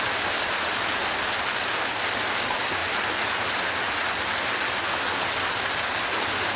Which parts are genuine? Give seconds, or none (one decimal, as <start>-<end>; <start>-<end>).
0.0-6.6

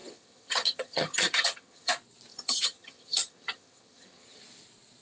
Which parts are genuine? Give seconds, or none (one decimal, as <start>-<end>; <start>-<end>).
1.9-2.3; 4.4-5.0

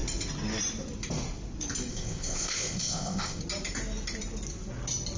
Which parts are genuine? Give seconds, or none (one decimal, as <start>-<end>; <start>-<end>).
0.0-1.9; 3.4-5.2